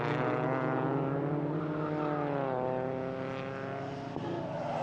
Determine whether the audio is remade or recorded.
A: recorded